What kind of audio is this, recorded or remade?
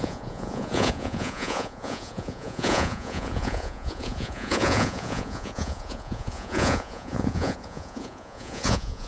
remade